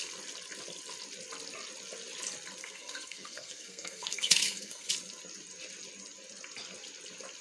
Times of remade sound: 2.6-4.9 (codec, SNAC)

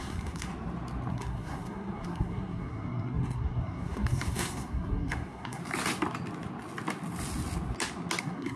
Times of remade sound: 0.0-0.5 (codec, SNAC); 1.1-5.6; 8.2-8.6